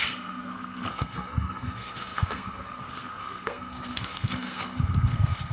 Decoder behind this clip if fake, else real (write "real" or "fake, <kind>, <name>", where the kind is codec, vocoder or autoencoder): fake, codec, SNAC